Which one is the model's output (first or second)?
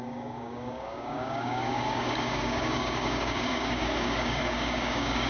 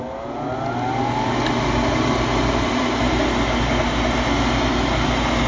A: first